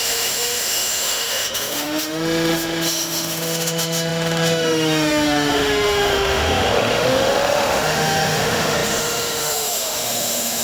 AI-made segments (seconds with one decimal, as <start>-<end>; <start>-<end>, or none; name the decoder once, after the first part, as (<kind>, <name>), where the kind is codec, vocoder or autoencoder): 0.0-10.6 (autoencoder, DAC-VAE)